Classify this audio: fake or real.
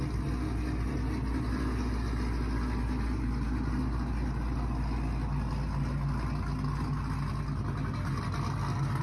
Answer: real